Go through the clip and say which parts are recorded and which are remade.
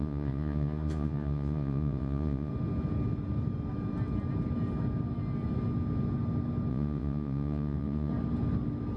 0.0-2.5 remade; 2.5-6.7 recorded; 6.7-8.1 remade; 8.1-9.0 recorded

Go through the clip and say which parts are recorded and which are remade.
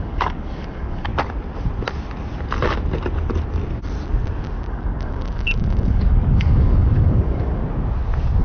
0.0-1.1 remade; 1.1-4.7 recorded; 4.7-7.6 remade; 7.6-8.4 recorded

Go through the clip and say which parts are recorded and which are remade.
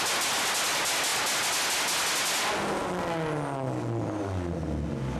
0.0-5.2 recorded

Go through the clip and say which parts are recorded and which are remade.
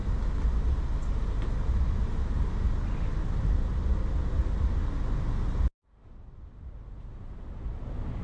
0.0-8.2 recorded